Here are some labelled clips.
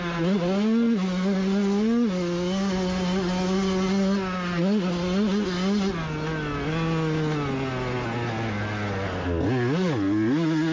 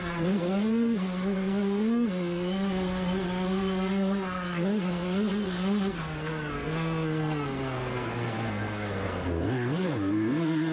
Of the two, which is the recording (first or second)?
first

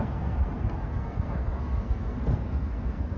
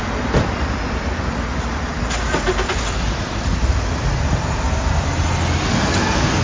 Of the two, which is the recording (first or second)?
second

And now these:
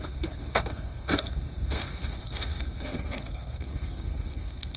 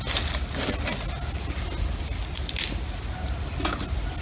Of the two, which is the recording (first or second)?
second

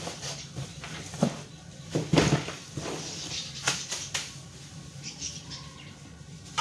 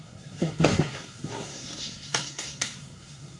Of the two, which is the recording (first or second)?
first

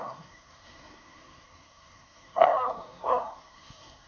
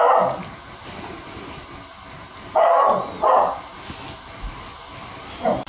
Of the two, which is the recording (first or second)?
second